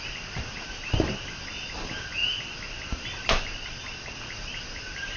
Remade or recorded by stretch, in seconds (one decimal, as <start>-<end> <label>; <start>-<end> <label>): 0.0-5.2 recorded